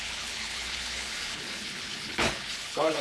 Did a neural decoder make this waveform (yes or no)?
yes